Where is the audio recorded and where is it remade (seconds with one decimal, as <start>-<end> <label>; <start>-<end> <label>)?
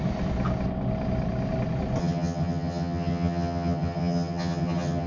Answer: 0.0-2.0 recorded; 2.0-5.1 remade